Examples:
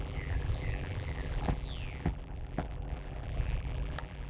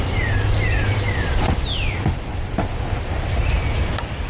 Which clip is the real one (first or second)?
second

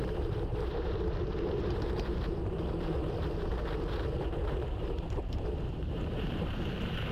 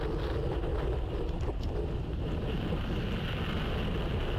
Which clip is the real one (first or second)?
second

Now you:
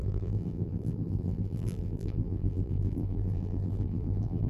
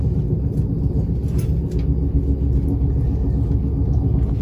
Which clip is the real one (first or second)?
second